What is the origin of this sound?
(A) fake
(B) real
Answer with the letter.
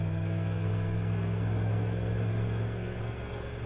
A